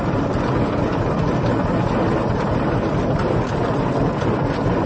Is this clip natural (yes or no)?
yes